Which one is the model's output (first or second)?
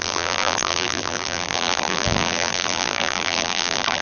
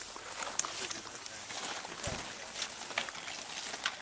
first